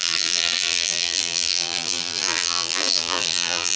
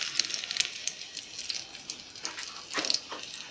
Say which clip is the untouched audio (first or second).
second